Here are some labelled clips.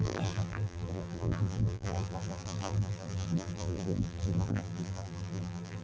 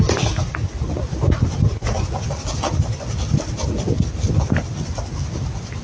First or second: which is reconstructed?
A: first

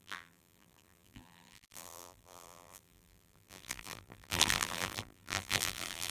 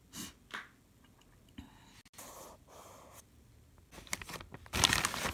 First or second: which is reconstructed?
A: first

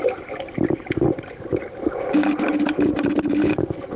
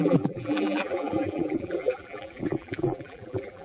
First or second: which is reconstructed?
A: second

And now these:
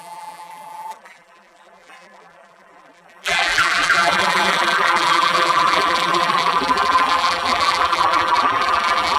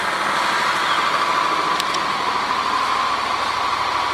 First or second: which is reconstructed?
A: first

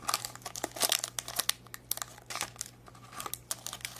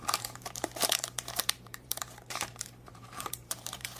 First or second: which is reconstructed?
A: second